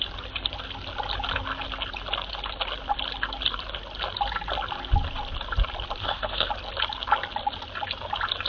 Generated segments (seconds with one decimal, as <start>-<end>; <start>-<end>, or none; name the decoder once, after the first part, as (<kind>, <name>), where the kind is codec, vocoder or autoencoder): 6.0-6.5 (codec, SNAC)